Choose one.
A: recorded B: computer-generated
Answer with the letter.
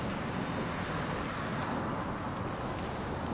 A